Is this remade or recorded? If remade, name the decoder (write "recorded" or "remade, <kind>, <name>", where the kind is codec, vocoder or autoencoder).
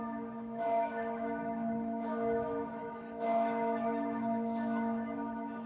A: remade, autoencoder, DAC-VAE